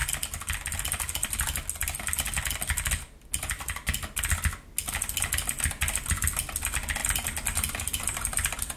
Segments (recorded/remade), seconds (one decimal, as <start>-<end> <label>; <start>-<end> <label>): 0.0-7.0 recorded; 7.0-8.8 remade

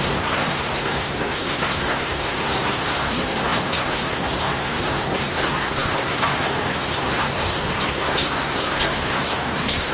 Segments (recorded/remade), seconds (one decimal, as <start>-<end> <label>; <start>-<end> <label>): 0.0-9.9 remade

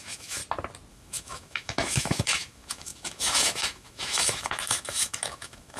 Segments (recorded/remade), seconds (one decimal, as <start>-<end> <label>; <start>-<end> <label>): 0.0-0.4 remade; 0.4-0.9 recorded; 0.9-5.8 remade